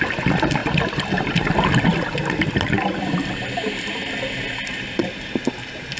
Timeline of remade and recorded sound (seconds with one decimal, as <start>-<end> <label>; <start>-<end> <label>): 0.0-0.6 recorded; 0.6-4.2 remade; 4.2-6.0 recorded

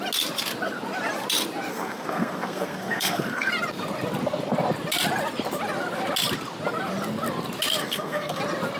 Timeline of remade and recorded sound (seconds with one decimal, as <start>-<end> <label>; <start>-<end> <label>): 0.0-1.7 recorded; 1.7-3.5 remade; 3.5-7.8 recorded; 7.8-8.4 remade; 8.4-8.8 recorded